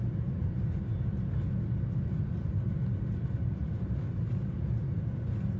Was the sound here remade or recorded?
recorded